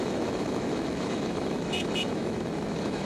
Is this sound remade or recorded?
remade